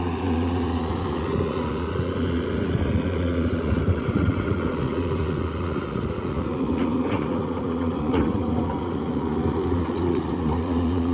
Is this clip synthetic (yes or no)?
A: yes